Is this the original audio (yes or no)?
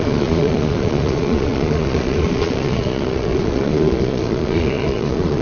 no